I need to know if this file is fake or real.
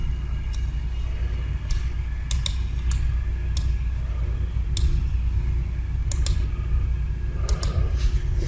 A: real